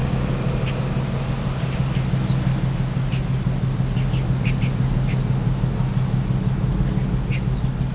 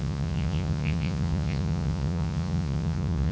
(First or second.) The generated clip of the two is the second